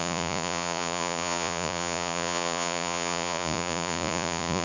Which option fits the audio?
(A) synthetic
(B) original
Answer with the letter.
A